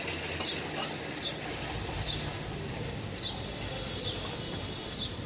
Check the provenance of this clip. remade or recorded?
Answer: recorded